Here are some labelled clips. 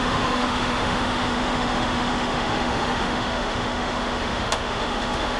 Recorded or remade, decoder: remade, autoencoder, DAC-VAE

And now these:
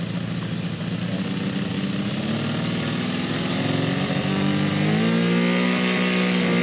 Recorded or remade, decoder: recorded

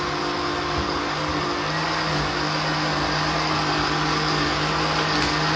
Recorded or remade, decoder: recorded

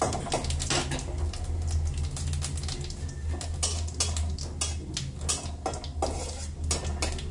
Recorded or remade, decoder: recorded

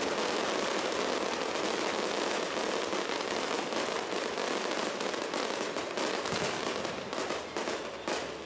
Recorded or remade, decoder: recorded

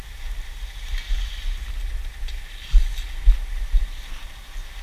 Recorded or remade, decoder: recorded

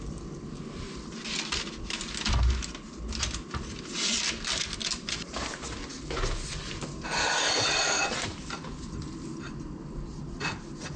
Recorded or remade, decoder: recorded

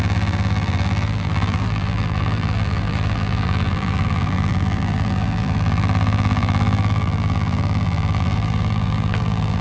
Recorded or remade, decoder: remade, vocoder, BigVGAN v2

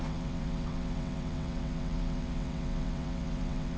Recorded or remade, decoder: remade, vocoder, WaveNeXt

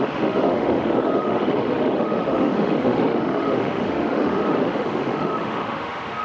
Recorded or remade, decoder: remade, autoencoder, DAC-VAE